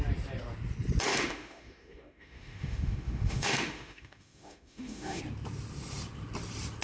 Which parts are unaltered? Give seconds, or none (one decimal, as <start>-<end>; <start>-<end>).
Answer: 0.0-1.1; 5.2-6.8